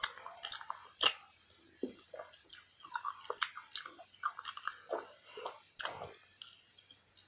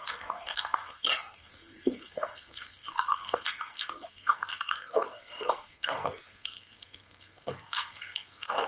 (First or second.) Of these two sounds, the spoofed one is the second